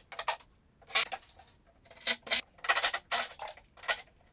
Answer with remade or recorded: recorded